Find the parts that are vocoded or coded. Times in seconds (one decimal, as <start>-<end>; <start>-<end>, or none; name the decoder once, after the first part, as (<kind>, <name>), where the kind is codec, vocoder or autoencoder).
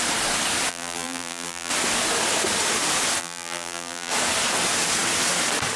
0.7-1.7 (vocoder, BigVGAN v2); 3.2-4.1